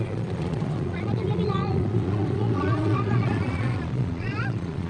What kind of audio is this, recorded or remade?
remade